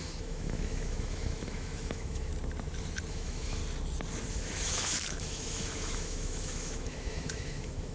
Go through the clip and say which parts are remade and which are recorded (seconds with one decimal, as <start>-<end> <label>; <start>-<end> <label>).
0.0-2.3 remade; 2.3-3.1 recorded; 3.1-3.6 remade; 3.6-4.3 recorded; 4.3-7.9 remade